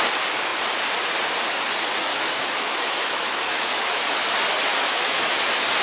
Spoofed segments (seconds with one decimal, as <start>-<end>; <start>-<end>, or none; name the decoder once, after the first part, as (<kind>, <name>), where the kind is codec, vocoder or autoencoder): 2.1-4.3 (autoencoder, DAC-VAE); 4.7-5.3